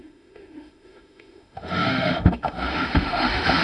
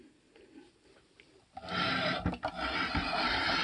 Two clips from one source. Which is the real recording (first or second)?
second